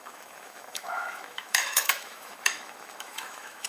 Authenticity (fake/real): fake